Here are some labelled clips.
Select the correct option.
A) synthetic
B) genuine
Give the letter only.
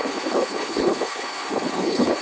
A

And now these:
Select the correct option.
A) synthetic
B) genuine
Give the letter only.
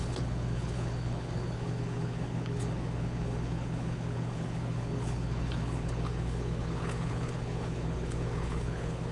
A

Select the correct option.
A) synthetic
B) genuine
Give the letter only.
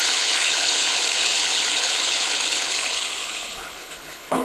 A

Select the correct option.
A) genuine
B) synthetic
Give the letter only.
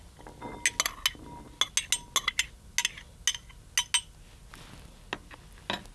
A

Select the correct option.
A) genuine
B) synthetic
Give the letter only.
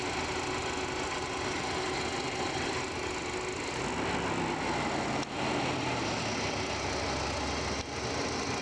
A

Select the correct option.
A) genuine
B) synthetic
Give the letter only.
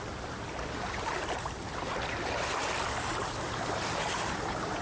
A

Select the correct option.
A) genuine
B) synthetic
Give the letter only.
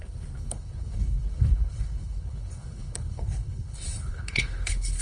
B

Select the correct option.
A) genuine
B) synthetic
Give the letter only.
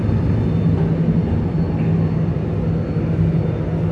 A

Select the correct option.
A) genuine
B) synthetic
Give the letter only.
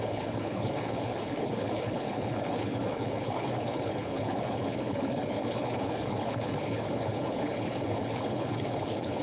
B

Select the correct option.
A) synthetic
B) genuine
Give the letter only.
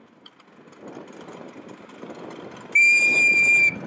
B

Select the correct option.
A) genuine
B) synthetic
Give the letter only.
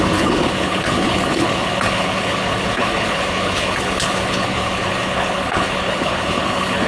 B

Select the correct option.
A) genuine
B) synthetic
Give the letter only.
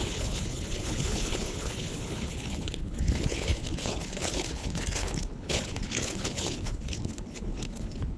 B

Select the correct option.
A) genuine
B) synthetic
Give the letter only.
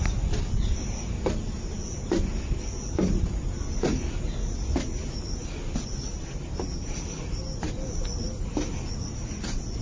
A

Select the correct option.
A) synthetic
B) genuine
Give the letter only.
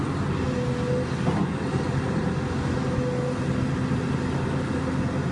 B